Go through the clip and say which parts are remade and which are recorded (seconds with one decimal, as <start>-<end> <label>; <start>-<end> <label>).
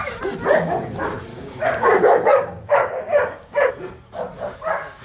0.0-1.3 recorded; 1.3-3.7 remade; 3.7-5.0 recorded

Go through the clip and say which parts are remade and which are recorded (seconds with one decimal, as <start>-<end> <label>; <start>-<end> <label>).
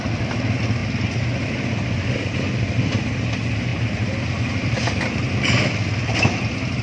0.0-3.7 remade; 3.7-4.3 recorded; 4.3-6.8 remade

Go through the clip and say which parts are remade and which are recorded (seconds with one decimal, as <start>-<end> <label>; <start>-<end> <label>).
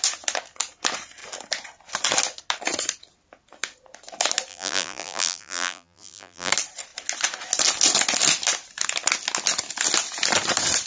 0.0-4.5 recorded; 4.5-6.5 remade; 6.5-10.9 recorded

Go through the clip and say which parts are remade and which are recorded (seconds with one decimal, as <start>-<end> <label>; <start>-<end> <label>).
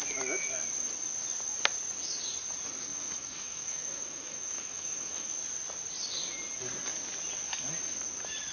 0.0-2.9 recorded; 2.9-5.3 remade; 5.3-8.5 recorded